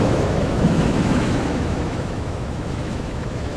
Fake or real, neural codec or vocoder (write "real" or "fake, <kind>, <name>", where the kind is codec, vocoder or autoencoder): fake, autoencoder, DAC-VAE